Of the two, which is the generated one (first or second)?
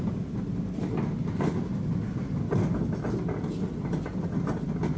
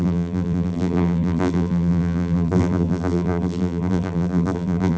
second